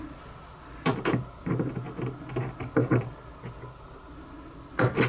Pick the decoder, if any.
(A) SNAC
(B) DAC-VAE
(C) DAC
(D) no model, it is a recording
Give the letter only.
D